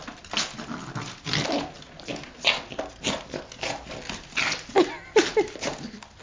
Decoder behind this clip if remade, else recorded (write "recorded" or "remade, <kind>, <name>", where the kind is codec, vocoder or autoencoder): recorded